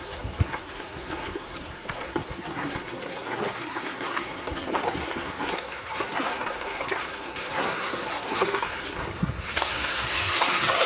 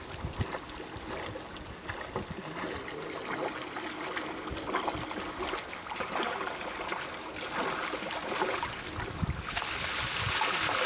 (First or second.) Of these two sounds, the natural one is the second